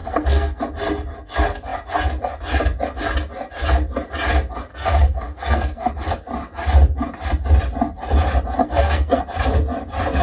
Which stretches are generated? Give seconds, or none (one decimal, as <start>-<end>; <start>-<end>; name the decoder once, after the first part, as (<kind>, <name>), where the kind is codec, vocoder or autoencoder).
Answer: 0.0-0.6 (codec, SNAC); 4.7-5.9; 8.6-9.2